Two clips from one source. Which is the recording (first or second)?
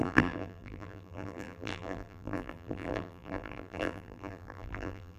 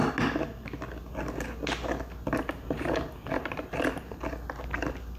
second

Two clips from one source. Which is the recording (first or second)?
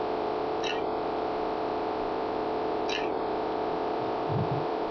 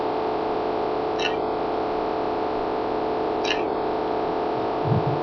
second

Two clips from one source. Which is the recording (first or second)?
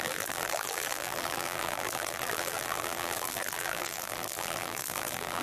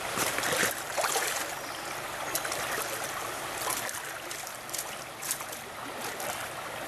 second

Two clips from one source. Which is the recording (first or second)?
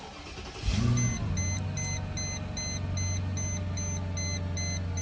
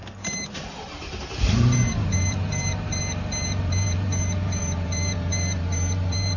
first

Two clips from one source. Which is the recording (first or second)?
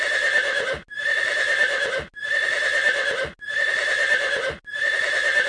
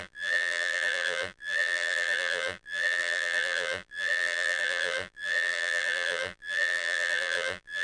first